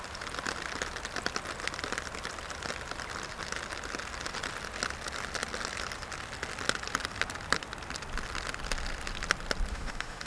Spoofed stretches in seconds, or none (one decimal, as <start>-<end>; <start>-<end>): 9.7-10.3